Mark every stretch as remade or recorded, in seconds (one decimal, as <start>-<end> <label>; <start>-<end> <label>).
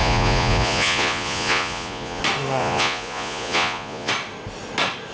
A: 0.0-2.2 remade; 2.2-2.6 recorded; 2.6-4.1 remade; 4.1-5.1 recorded